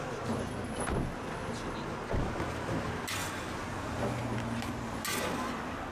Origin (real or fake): real